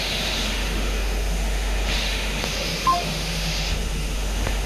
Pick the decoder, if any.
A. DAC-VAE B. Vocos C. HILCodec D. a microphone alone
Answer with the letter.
A